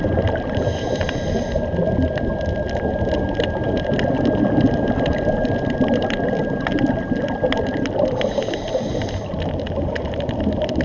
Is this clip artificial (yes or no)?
no